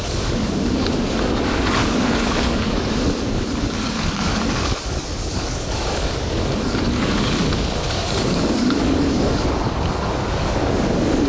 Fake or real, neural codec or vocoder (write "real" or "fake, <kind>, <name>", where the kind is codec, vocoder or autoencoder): fake, codec, DAC